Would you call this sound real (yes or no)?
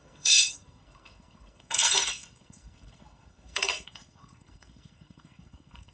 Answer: no